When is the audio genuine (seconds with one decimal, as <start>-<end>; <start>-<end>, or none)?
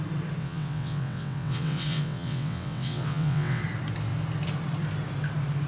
0.0-0.4; 3.6-5.7